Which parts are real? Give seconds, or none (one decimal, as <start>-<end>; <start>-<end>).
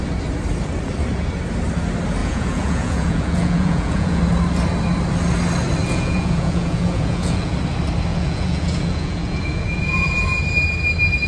0.0-2.2; 4.2-5.8; 7.6-8.1; 10.4-11.3